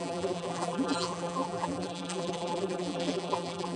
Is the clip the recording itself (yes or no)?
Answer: no